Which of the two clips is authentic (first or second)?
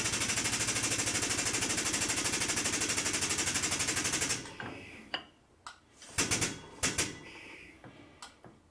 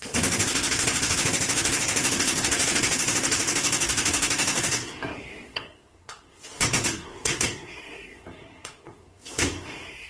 first